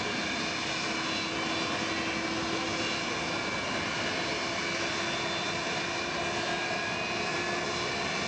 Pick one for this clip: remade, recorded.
recorded